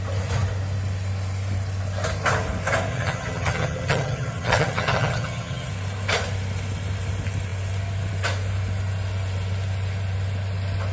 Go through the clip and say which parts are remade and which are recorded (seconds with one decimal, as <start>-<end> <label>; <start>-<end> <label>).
0.0-2.9 recorded; 2.9-5.7 remade; 5.7-10.9 recorded